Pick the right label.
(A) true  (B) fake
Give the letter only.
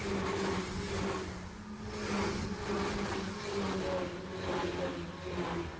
A